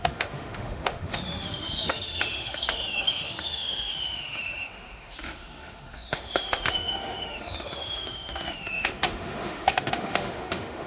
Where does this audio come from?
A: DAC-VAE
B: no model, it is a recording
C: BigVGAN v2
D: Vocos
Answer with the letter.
A